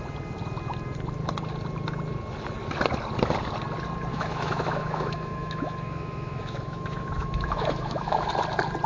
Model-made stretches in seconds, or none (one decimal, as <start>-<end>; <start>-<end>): 4.1-8.3